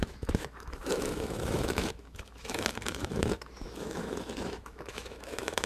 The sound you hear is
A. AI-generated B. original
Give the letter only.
A